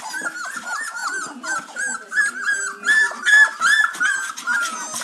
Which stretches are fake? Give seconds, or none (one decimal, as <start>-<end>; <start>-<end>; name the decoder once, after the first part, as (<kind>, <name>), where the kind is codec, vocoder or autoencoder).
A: none

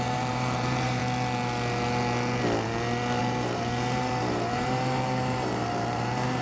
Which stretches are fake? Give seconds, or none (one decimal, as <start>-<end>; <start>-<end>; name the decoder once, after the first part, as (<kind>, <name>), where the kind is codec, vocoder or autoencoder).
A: 0.0-1.0 (vocoder, BigVGAN v2); 3.2-6.4

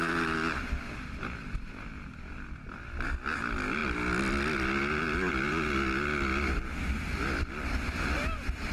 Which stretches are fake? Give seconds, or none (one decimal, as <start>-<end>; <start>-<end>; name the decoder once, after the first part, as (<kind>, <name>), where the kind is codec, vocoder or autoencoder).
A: none

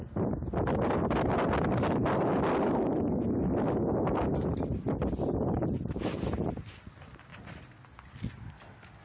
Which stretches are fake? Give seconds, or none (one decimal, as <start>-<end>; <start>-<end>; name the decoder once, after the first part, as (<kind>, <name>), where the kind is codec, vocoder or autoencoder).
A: none

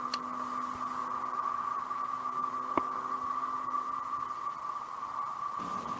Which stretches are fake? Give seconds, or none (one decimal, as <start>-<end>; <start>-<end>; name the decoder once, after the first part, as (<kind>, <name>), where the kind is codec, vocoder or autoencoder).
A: none